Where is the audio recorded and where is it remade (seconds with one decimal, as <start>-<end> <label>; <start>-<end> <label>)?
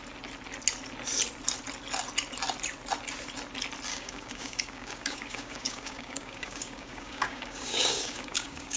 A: 0.0-3.9 recorded; 3.9-8.8 remade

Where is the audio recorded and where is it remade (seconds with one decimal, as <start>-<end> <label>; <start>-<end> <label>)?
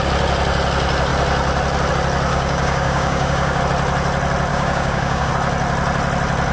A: 0.0-2.3 recorded; 2.3-3.6 remade; 3.6-4.5 recorded; 4.5-5.3 remade; 5.3-6.5 recorded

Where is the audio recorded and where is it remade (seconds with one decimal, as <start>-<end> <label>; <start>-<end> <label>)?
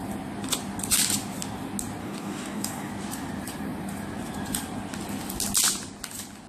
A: 0.0-2.0 recorded; 2.0-2.9 remade; 2.9-6.5 recorded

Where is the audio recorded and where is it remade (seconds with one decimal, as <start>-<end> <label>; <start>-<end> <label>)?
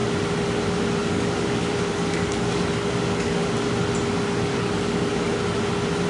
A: 0.0-1.0 recorded; 1.0-3.5 remade; 3.5-4.5 recorded; 4.5-5.3 remade; 5.3-6.1 recorded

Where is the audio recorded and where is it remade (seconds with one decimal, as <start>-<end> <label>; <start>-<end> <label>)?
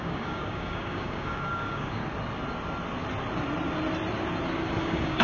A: 0.0-2.0 remade; 2.0-4.8 recorded; 4.8-5.2 remade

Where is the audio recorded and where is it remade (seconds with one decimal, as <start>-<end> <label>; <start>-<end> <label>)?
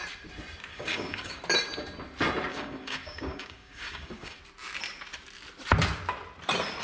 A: 0.0-0.7 recorded; 0.7-1.4 remade; 1.4-2.5 recorded; 2.5-4.4 remade; 4.4-6.8 recorded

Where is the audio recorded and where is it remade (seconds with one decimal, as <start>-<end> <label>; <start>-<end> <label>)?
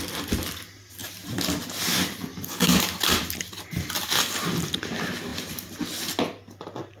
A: 0.0-2.3 recorded; 2.3-2.8 remade; 2.8-7.0 recorded